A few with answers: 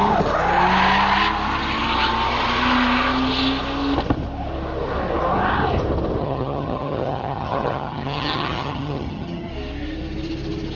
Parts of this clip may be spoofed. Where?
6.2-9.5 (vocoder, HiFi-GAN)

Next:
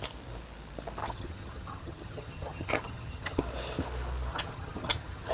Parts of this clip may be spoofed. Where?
1.0-3.4 (vocoder, HiFi-GAN); 4.3-5.3

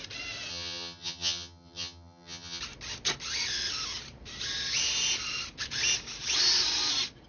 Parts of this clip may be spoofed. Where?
0.5-2.6 (vocoder, HiFi-GAN)

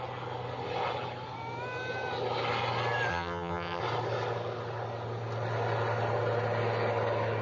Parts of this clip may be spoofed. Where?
3.1-3.8 (vocoder, HiFi-GAN)

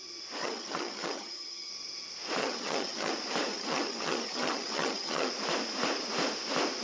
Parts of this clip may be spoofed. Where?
0.4-1.7 (vocoder, HiFi-GAN); 2.4-3.1; 3.5-5.3

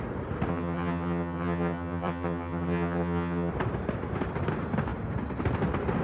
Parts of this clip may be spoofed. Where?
0.5-3.5 (vocoder, HiFi-GAN)

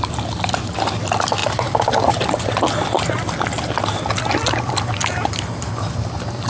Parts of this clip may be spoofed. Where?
none

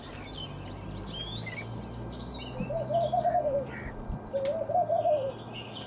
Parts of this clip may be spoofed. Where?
none